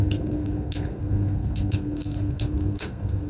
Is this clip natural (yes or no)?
no